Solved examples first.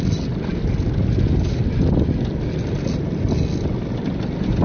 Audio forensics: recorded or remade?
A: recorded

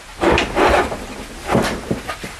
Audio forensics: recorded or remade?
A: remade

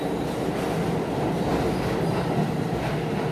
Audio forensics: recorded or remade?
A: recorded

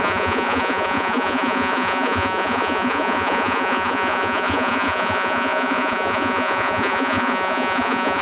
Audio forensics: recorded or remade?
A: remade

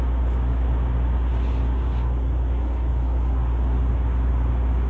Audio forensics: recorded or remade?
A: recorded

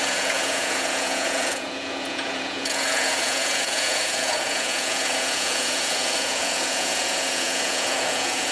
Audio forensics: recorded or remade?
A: remade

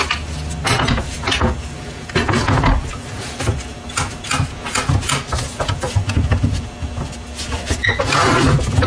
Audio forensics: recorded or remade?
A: recorded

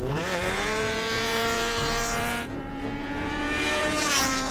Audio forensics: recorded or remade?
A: remade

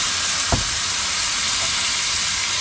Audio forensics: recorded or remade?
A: recorded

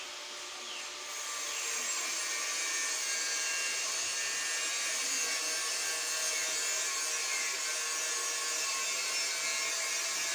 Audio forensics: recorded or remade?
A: recorded